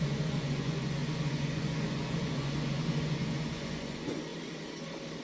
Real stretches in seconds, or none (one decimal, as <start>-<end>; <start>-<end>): 4.3-5.2